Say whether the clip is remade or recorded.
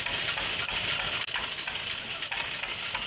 recorded